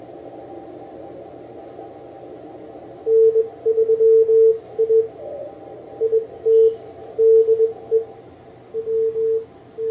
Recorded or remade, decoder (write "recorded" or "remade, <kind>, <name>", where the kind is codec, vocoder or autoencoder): recorded